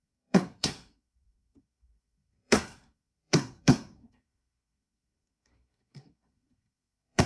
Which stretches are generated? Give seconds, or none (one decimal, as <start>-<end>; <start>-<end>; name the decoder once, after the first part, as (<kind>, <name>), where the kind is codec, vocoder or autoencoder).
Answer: 0.0-7.3 (codec, SNAC)